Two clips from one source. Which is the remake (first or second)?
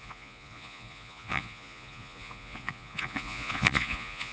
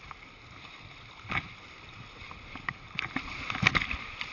first